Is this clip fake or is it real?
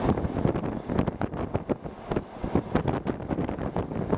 real